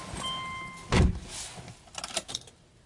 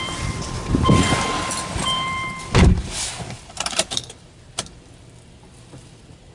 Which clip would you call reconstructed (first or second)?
second